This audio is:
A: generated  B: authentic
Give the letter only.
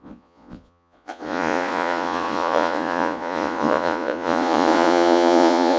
A